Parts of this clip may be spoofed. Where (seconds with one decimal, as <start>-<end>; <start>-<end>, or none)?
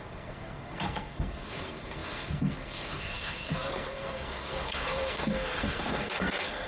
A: 0.0-6.7